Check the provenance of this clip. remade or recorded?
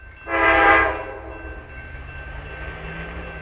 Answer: recorded